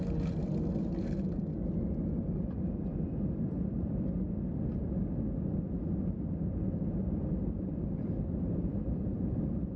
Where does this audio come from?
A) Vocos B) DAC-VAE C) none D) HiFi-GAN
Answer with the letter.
C